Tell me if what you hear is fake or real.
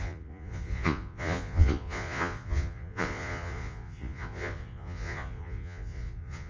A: fake